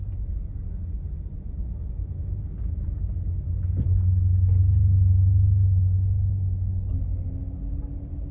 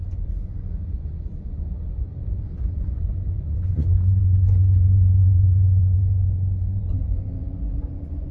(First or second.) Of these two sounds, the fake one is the second